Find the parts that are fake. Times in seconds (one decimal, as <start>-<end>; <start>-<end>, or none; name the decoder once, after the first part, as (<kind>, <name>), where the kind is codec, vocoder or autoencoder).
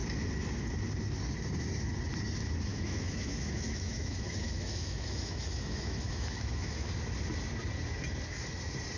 2.7-6.9 (autoencoder, DAC-VAE)